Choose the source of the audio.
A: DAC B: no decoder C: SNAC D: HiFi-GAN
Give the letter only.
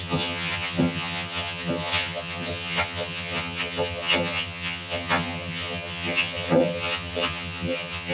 D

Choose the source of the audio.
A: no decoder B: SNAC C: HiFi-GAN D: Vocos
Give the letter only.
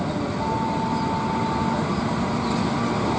A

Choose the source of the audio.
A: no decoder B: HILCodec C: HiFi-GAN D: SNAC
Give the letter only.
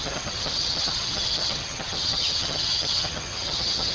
C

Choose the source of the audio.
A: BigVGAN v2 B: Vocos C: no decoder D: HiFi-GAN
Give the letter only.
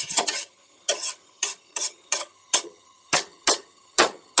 D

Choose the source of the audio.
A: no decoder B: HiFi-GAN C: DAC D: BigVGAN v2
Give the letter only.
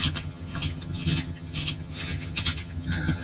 B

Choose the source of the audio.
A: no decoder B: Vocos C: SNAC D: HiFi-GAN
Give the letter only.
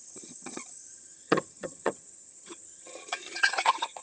D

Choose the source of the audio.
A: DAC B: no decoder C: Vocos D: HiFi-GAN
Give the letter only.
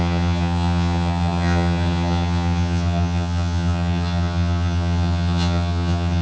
D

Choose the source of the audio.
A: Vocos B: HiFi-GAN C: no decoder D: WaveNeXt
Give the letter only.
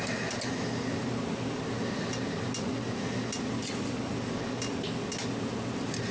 C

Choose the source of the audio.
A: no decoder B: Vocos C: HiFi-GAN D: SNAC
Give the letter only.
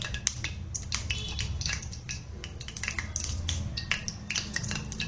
A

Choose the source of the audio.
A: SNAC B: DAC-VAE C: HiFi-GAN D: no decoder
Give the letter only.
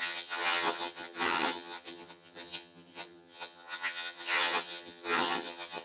C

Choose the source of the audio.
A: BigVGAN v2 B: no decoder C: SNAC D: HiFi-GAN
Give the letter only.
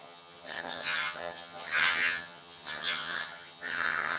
D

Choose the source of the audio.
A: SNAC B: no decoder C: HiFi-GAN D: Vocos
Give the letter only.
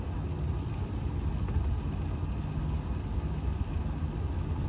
B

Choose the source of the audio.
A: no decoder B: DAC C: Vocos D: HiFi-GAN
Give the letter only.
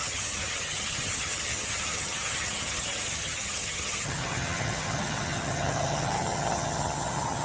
D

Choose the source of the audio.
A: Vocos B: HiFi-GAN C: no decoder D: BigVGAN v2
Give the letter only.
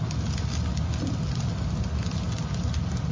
C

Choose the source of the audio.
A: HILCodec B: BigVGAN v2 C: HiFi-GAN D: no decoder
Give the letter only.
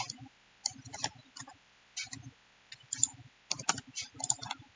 D